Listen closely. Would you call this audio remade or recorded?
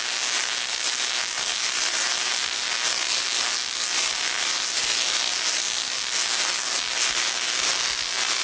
recorded